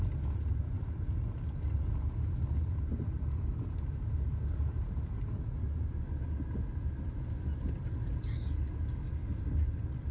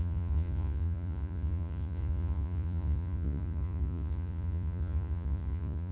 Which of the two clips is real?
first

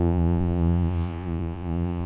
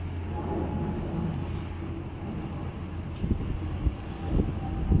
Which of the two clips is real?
second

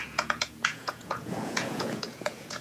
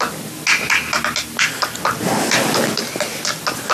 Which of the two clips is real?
second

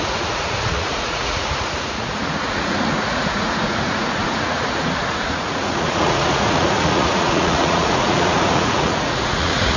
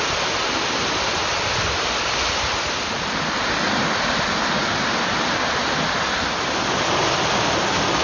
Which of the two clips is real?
second